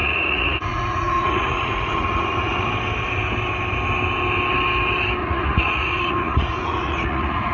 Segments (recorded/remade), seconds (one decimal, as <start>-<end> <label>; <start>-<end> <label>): 0.0-2.7 remade; 2.7-5.2 recorded; 5.2-7.5 remade